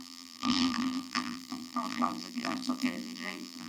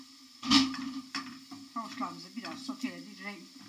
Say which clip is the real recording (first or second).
second